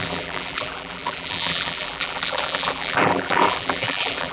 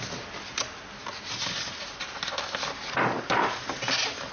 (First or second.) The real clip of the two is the second